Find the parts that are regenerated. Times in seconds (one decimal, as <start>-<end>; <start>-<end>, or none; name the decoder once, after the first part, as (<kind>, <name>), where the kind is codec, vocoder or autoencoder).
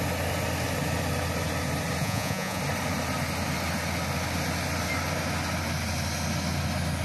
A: 2.0-2.6 (vocoder, Vocos)